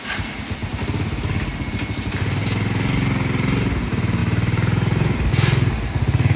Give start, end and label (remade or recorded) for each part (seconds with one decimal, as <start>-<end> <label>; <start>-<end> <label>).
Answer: 0.0-6.4 recorded